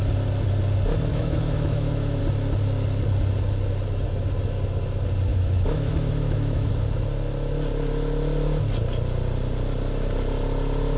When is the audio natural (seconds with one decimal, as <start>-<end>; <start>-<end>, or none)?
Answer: 0.0-1.1; 2.2-5.3; 6.7-11.0